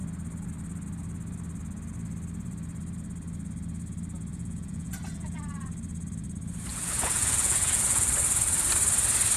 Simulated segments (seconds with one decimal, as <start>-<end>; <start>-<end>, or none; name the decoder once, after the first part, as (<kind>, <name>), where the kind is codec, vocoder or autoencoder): 4.3-5.4 (vocoder, Vocos); 6.7-8.1